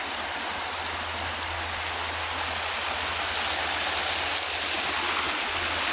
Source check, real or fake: real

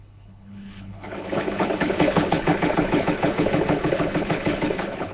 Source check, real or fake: fake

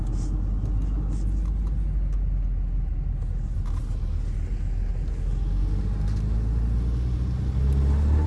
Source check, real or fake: real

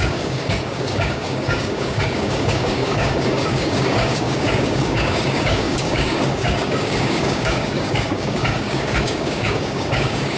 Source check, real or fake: fake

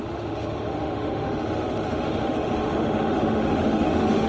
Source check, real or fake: fake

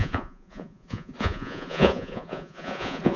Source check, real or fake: fake